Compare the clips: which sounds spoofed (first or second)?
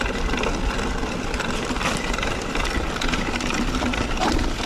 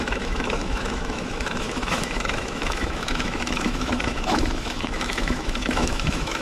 second